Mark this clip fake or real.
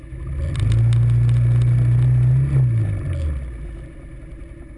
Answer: real